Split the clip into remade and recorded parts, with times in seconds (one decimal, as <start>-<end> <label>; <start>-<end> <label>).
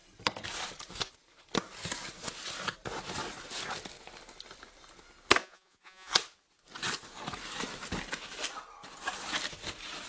0.0-5.4 recorded; 5.4-6.1 remade; 6.1-10.1 recorded